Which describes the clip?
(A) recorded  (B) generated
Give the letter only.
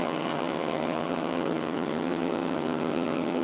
B